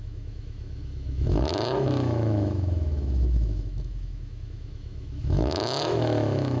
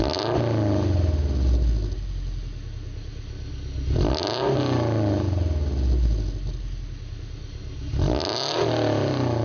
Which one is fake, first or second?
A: first